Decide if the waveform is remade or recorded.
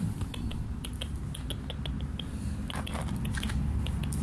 recorded